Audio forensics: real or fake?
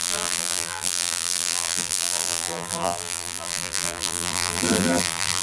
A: fake